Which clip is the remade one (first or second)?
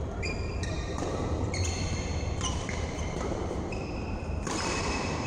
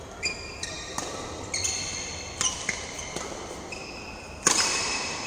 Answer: first